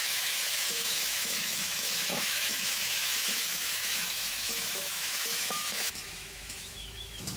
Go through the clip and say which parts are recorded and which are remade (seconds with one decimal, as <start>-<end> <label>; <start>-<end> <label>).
0.0-7.4 remade